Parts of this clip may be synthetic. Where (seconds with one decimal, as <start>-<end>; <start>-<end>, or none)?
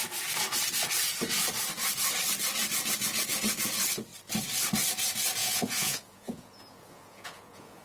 5.4-7.8